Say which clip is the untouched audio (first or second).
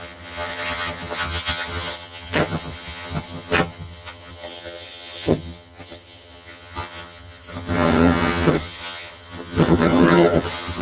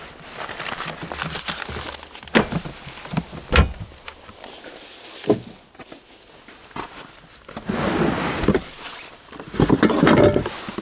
second